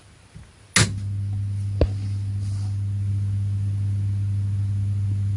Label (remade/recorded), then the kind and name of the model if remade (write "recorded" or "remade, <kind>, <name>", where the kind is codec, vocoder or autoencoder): recorded